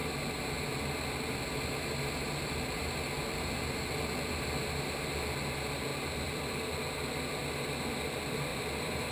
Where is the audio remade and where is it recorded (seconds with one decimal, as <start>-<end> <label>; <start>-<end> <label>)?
0.0-5.9 recorded; 5.9-7.3 remade; 7.3-8.5 recorded; 8.5-9.1 remade